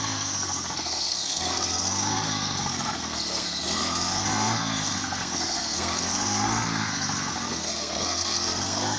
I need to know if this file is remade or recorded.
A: remade